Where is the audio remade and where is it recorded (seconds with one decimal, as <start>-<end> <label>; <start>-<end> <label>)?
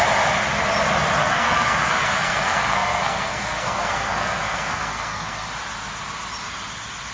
0.0-1.2 recorded; 1.2-5.5 remade; 5.5-7.1 recorded